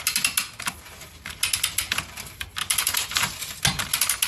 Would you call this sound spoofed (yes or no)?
no